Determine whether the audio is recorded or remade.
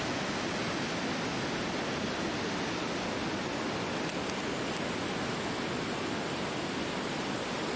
recorded